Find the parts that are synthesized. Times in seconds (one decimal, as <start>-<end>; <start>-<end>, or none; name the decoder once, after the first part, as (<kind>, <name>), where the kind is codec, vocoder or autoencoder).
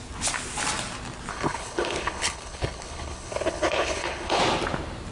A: 1.3-4.4 (codec, HILCodec)